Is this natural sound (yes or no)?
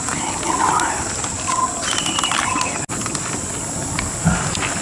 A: yes